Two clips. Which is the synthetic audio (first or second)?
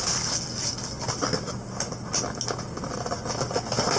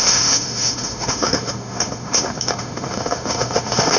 second